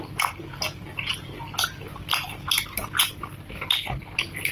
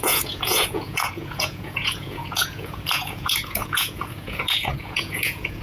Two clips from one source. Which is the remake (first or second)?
second